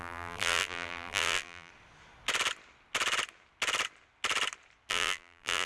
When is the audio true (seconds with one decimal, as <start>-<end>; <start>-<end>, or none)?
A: 1.7-4.9